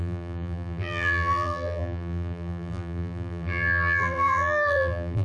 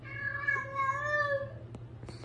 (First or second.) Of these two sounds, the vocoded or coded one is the first